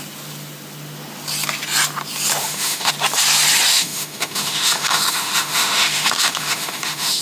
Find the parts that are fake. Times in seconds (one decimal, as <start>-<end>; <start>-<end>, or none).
2.4-2.9; 3.7-7.2